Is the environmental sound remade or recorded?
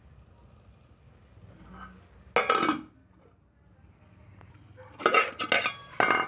recorded